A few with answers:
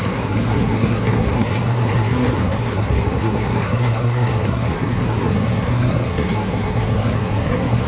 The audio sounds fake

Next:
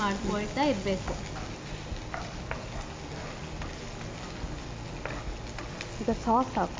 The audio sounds real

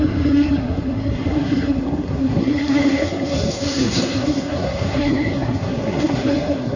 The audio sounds fake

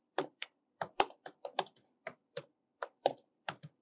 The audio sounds fake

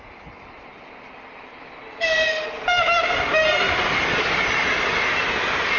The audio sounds real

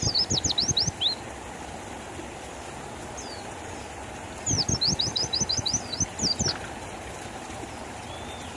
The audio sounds real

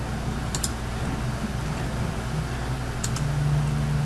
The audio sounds real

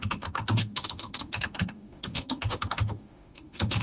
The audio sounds fake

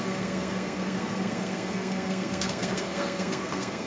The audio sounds fake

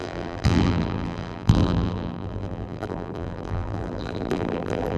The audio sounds fake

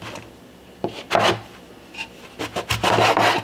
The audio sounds real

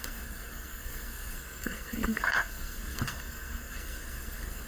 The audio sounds fake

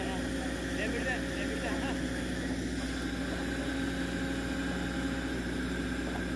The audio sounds real